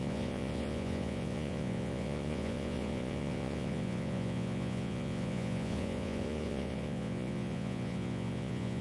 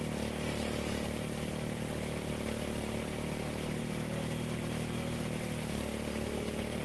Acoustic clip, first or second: second